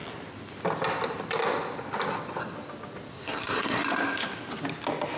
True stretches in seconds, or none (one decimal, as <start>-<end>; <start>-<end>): 0.0-3.1; 3.8-5.2